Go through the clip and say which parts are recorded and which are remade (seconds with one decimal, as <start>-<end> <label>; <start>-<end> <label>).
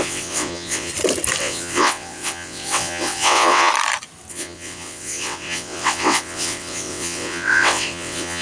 0.0-0.9 remade; 0.9-1.4 recorded; 1.4-3.7 remade; 3.7-4.3 recorded; 4.3-8.4 remade